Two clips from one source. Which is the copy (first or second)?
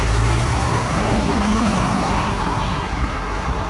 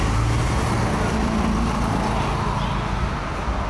first